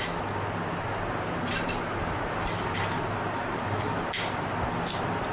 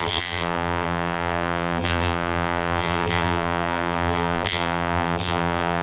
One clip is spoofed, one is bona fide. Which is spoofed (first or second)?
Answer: second